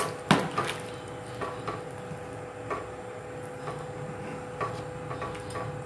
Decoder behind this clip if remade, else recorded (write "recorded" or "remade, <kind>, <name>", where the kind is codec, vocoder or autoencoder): recorded